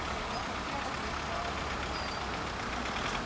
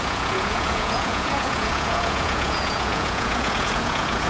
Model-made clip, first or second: second